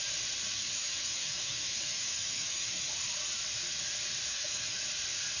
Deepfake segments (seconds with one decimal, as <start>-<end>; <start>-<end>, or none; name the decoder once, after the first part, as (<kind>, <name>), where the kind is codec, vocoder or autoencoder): 0.6-2.9 (autoencoder, DAC-VAE); 4.3-4.8